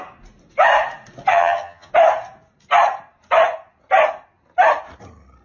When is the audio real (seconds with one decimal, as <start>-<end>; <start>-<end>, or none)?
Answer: 0.0-1.3; 1.9-5.4